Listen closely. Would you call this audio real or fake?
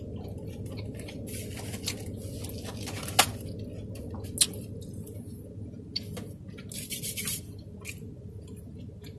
real